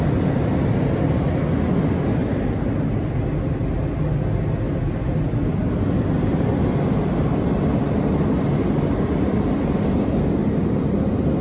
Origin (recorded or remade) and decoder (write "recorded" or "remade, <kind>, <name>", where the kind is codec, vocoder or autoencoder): recorded